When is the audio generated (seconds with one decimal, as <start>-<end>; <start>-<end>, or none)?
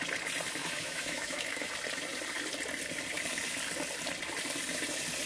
0.6-1.7